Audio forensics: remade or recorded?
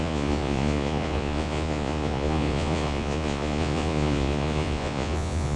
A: remade